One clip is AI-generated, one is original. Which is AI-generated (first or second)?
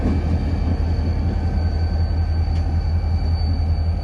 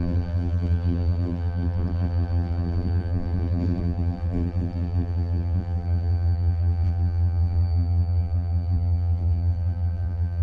second